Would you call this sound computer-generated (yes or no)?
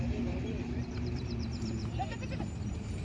yes